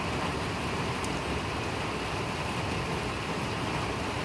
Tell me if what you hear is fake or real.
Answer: real